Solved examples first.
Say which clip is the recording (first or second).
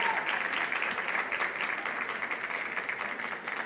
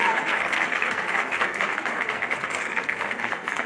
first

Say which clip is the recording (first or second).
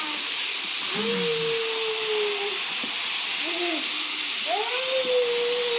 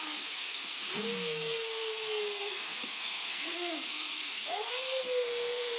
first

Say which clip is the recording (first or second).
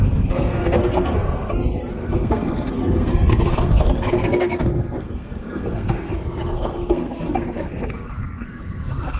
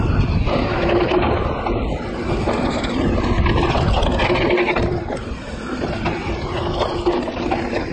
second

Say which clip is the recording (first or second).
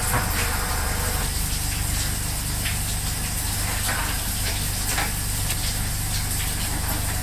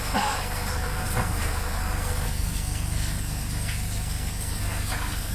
first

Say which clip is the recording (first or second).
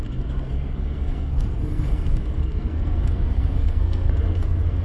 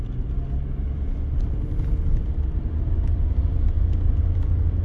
second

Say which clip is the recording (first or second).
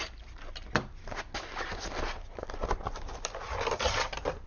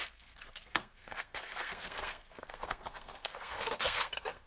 first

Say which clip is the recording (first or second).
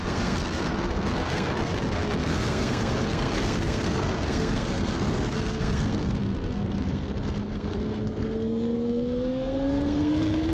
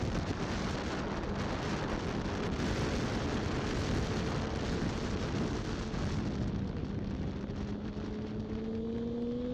second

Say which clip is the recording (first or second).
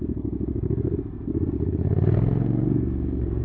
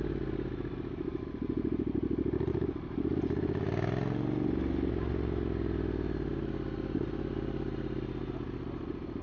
second